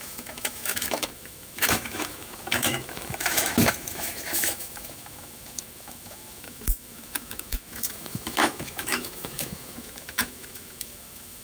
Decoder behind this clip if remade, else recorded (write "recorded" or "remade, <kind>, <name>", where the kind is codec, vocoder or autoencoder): remade, autoencoder, DAC-VAE